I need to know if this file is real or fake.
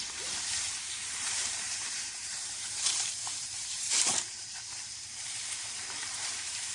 fake